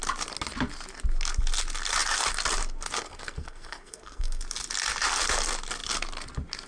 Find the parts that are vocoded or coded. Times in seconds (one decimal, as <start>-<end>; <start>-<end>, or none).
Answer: 3.0-4.4